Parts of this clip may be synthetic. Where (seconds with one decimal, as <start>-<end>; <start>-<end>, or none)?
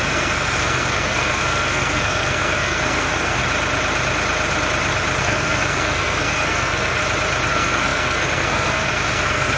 0.0-3.4; 5.2-7.0; 7.5-9.6